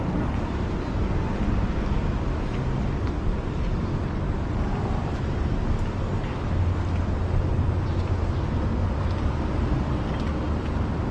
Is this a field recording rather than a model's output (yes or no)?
yes